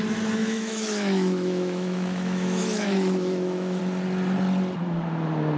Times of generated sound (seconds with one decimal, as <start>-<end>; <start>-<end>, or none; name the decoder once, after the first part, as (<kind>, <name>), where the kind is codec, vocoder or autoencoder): 0.4-3.8 (autoencoder, DAC-VAE)